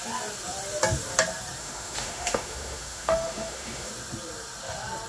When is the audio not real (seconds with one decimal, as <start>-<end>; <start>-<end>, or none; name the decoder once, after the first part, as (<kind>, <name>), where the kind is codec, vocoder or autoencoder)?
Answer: 1.6-3.9 (autoencoder, DAC-VAE)